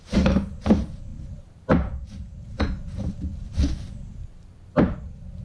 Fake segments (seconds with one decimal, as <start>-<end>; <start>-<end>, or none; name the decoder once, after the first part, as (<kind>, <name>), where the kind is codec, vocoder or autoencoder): 0.0-5.4 (vocoder, BigVGAN v2)